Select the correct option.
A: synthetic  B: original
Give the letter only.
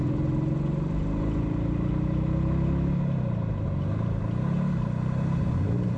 B